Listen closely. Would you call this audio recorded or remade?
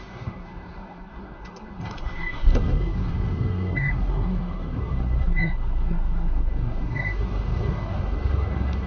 remade